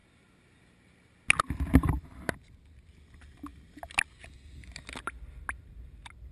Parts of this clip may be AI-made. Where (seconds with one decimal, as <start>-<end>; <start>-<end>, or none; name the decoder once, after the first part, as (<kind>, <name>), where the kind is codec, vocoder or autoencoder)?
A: none